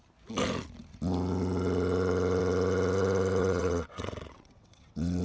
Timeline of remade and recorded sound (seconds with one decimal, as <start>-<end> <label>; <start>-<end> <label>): 0.0-3.4 recorded; 3.4-5.2 remade